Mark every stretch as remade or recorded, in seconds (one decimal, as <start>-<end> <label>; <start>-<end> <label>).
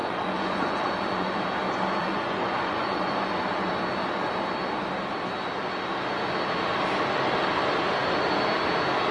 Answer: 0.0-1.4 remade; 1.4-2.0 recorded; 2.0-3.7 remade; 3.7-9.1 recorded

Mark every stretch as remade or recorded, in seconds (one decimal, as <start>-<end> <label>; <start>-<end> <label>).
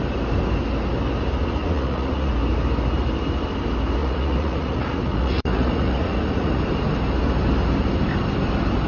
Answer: 0.0-1.6 recorded; 1.6-2.3 remade; 2.3-4.0 recorded; 4.0-6.6 remade; 6.6-8.9 recorded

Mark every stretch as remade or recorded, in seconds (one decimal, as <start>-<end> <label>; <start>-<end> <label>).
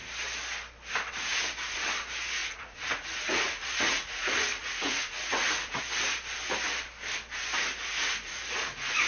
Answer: 0.0-2.4 recorded; 2.4-5.8 remade; 5.8-7.8 recorded; 7.8-9.1 remade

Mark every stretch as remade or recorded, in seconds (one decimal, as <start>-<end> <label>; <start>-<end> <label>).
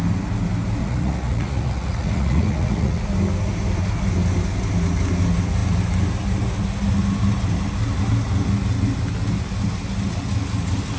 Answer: 0.0-0.8 recorded; 0.8-3.0 remade; 3.0-11.0 recorded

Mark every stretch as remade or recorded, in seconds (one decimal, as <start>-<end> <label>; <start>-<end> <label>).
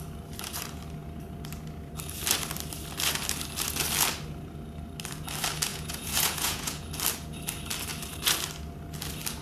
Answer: 0.0-5.7 recorded; 5.7-6.9 remade; 6.9-9.4 recorded